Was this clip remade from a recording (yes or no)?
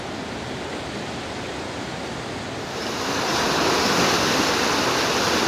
no